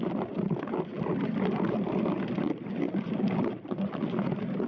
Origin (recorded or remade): remade